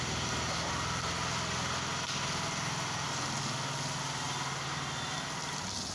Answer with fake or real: real